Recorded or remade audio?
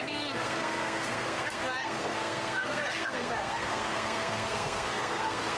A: remade